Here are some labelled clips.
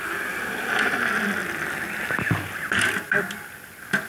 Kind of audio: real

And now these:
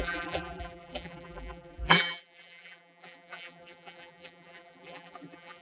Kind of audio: fake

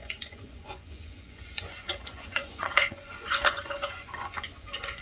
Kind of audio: fake